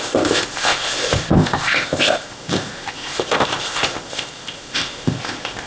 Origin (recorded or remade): remade